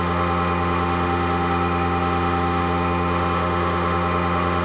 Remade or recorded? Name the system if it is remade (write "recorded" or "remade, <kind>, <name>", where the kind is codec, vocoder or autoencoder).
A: remade, autoencoder, DAC-VAE